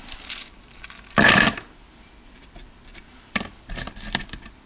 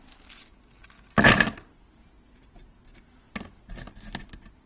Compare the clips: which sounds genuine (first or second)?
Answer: second